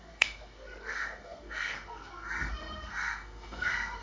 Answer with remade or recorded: remade